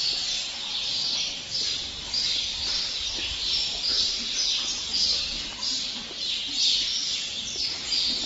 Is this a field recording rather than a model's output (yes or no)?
yes